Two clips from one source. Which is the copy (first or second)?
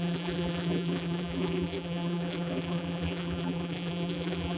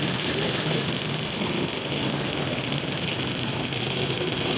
first